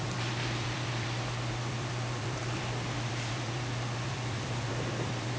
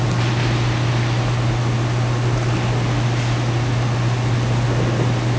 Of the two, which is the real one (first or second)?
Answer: second